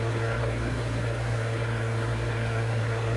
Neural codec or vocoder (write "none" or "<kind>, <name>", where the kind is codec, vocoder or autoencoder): codec, SNAC